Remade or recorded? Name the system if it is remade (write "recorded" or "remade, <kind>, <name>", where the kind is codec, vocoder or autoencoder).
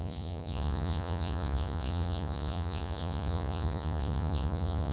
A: remade, vocoder, Vocos